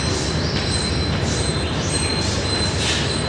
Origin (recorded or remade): recorded